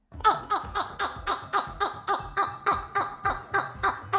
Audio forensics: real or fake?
fake